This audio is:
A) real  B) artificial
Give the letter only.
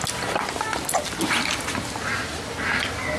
A